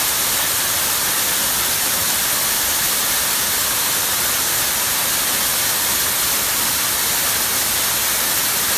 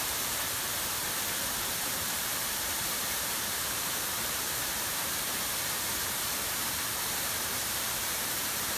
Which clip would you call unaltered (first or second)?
first